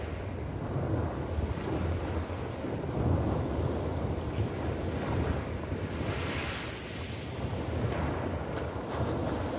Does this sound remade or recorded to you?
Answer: recorded